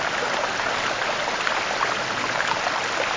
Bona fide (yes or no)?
yes